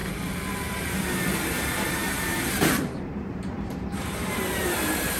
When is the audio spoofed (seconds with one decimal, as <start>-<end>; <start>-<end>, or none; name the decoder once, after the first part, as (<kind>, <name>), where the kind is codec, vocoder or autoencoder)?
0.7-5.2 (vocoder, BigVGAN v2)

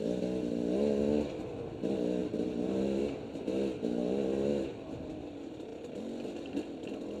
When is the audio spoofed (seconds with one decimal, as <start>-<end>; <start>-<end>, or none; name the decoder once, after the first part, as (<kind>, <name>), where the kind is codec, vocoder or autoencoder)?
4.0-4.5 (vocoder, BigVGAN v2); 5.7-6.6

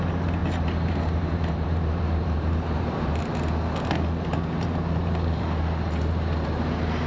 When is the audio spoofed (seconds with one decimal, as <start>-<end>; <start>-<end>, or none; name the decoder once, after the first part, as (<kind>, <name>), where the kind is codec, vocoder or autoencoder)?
0.4-3.2 (vocoder, BigVGAN v2); 4.3-6.6

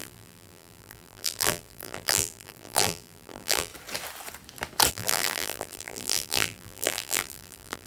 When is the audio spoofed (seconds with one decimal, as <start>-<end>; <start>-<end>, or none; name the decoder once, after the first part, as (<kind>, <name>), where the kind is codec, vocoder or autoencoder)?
0.0-3.7 (vocoder, BigVGAN v2); 4.9-7.9

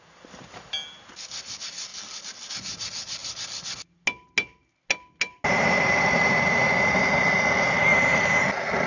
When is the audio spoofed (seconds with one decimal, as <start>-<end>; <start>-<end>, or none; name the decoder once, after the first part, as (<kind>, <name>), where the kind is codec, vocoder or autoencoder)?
none

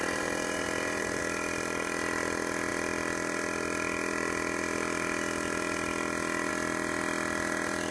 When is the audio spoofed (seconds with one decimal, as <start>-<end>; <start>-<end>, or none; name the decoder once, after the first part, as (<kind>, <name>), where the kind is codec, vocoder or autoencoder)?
0.0-1.2 (vocoder, BigVGAN v2)